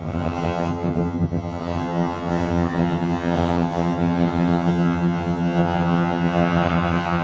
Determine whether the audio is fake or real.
fake